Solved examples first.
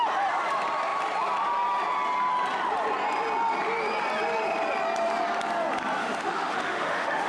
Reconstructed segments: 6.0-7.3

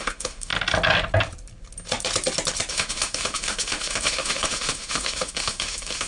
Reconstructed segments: 0.0-0.5; 2.7-6.1

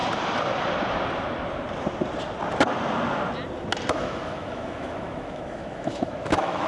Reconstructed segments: 3.9-6.7

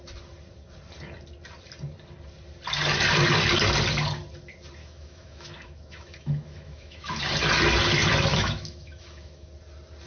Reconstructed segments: 4.8-7.2; 8.3-9.5

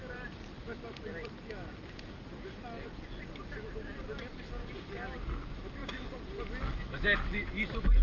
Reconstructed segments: none